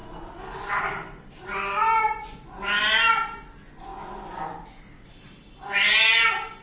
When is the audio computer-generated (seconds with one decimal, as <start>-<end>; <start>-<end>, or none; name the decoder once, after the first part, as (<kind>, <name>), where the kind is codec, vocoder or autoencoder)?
2.0-2.6 (vocoder, Vocos)